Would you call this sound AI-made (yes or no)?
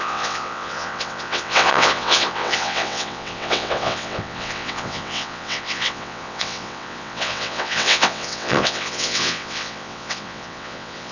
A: yes